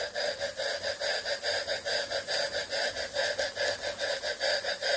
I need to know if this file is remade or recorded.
recorded